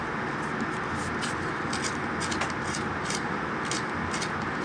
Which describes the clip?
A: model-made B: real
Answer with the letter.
B